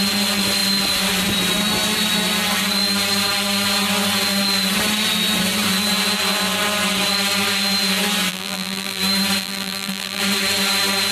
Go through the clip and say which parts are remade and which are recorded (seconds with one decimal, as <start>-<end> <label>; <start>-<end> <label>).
0.0-8.3 recorded; 8.3-9.0 remade; 9.0-9.4 recorded; 9.4-10.2 remade; 10.2-11.1 recorded